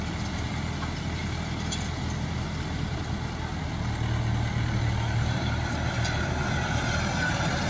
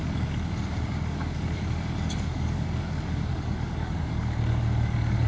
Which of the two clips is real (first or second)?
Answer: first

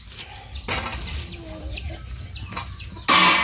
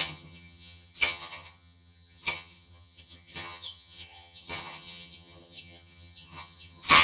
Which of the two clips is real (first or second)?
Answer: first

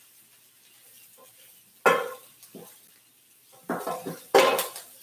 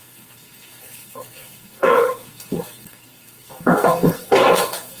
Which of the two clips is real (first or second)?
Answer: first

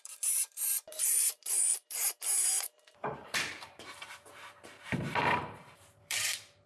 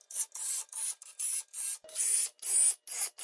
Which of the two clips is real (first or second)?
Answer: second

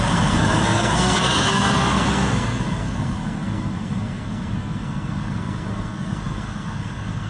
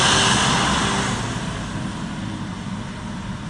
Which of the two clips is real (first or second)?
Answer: second